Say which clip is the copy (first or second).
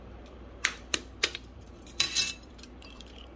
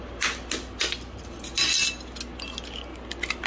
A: first